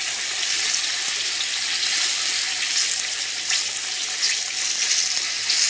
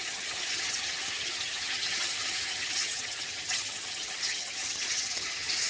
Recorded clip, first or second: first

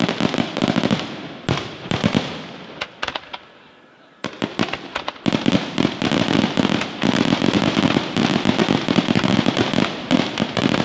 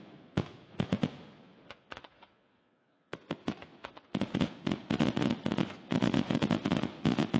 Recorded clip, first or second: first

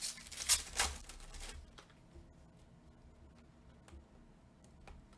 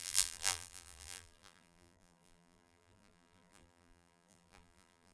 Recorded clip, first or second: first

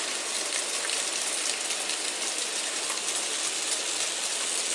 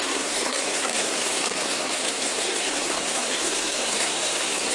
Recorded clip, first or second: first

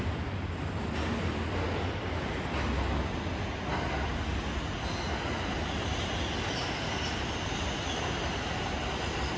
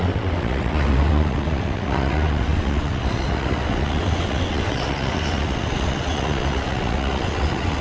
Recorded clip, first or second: first